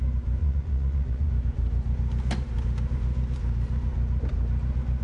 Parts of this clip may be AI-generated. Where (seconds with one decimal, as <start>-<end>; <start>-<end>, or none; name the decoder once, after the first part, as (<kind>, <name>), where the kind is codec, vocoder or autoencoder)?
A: 0.4-1.3 (vocoder, Vocos)